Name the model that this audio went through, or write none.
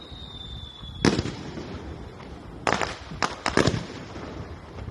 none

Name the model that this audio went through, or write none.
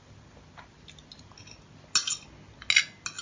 none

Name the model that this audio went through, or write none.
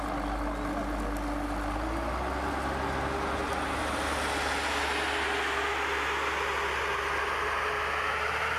none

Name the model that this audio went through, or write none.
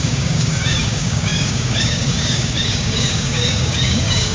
codec, DAC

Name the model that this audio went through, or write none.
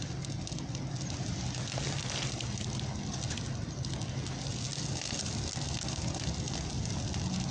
none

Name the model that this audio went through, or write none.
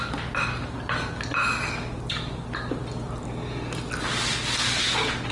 none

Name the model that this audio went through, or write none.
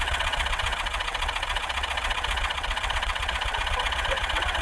vocoder, WaveNeXt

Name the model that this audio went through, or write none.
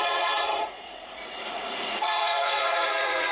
vocoder, Vocos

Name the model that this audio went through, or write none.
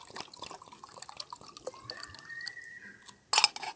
none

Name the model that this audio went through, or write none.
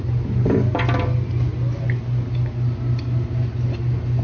none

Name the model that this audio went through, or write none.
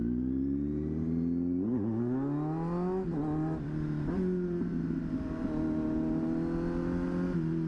none